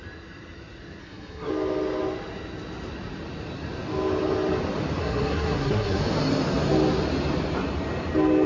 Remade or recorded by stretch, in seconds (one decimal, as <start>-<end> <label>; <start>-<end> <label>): 0.0-1.0 recorded; 1.0-1.5 remade; 1.5-5.0 recorded; 5.0-6.0 remade; 6.0-8.5 recorded